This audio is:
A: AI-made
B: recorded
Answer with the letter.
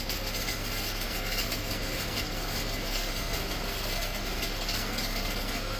A